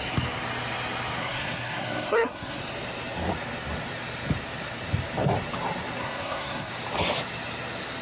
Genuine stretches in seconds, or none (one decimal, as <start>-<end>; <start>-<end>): 0.0-1.2; 2.6-6.0; 6.7-8.0

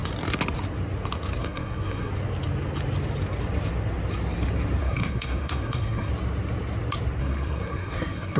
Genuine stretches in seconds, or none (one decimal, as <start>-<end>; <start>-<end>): 0.0-1.4; 2.1-4.8; 6.1-7.2

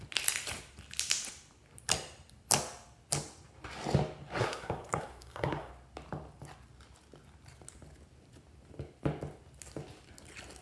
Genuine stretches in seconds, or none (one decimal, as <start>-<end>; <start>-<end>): 0.0-4.4; 5.7-10.6

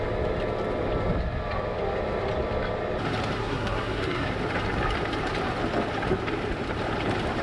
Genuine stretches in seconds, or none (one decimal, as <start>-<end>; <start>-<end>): 0.0-3.4; 4.3-7.4